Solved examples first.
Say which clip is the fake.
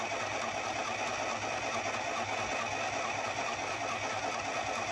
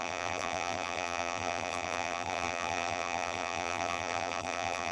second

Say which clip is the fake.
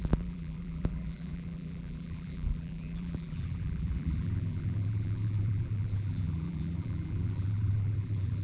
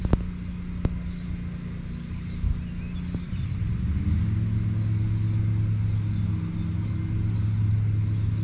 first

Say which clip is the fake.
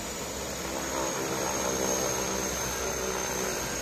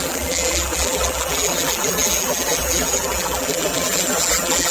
second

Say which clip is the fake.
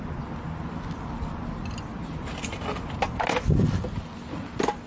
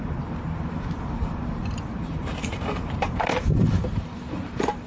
second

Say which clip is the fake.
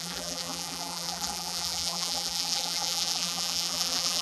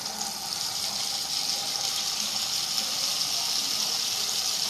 first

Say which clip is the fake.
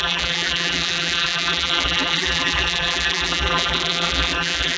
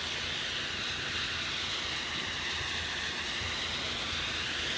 first